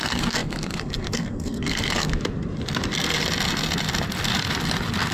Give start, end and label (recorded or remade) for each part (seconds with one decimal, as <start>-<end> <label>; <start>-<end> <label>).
0.0-2.1 remade; 2.1-5.1 recorded

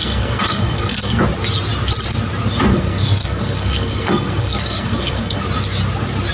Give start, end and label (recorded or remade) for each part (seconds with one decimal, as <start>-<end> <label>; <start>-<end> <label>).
0.0-1.2 remade; 1.2-2.7 recorded; 2.7-5.4 remade; 5.4-6.3 recorded

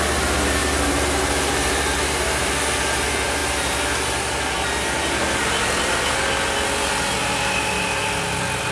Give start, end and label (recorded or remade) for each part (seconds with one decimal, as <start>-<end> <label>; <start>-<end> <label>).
0.0-8.7 recorded